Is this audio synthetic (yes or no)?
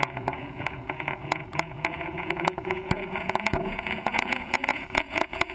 yes